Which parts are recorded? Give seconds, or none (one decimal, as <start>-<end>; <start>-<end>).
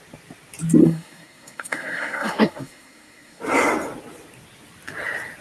0.0-0.8; 3.4-5.4